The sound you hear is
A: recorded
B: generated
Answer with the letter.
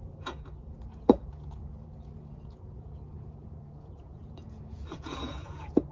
B